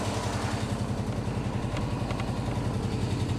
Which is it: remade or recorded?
recorded